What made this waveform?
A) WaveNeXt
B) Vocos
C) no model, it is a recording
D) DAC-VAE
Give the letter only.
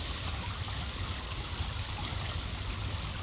C